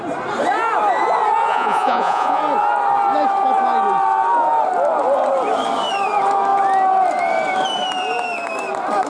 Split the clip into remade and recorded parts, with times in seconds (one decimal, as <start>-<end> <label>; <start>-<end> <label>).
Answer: 0.0-1.5 recorded; 1.5-2.4 remade; 2.4-9.1 recorded